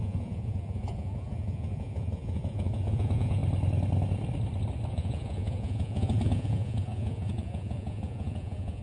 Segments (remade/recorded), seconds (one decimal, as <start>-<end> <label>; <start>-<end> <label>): 0.0-3.4 remade; 3.4-4.9 recorded; 4.9-8.8 remade